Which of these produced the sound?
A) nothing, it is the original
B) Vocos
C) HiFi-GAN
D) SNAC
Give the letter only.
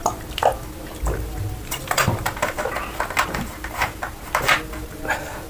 A